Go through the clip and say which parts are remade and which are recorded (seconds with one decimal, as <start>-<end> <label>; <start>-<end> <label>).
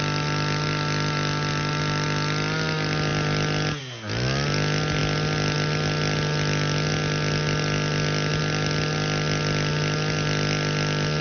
0.0-11.2 recorded